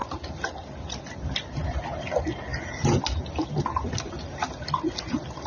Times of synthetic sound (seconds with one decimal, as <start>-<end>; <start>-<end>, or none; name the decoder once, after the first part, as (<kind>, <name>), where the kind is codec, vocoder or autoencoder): none